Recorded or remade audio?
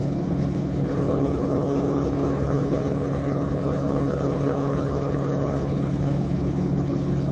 remade